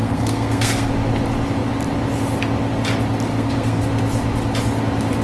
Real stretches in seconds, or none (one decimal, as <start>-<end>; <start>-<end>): 0.9-3.3; 3.8-5.2